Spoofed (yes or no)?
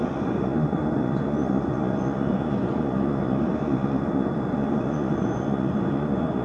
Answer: yes